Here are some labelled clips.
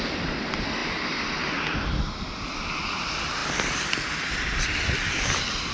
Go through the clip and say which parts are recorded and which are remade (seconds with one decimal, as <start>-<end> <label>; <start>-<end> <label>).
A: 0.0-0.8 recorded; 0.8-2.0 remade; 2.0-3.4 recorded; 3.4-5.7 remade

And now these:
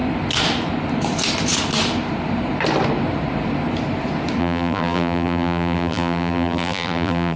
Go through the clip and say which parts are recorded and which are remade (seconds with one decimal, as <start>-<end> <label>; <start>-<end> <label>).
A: 0.0-4.4 recorded; 4.4-7.4 remade

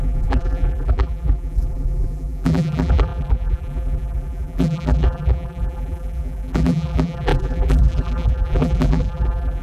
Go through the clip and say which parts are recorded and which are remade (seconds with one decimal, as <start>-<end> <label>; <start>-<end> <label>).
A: 0.0-9.6 remade

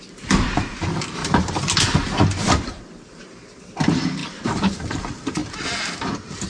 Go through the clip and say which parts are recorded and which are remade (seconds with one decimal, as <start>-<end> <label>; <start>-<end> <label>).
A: 0.0-1.2 remade; 1.2-2.5 recorded; 2.5-6.5 remade